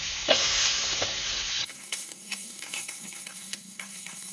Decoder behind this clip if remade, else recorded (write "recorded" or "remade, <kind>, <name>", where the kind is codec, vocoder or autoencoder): remade, codec, SNAC